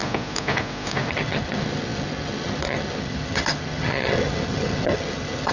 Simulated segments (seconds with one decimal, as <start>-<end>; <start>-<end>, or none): 1.1-5.5